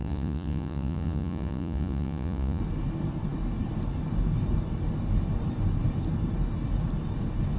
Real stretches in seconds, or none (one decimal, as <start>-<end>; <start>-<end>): 2.6-7.6